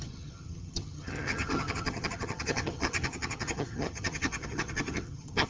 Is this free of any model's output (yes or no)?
no